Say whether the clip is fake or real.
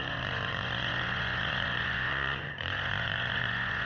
fake